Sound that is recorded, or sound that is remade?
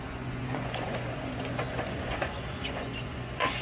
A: remade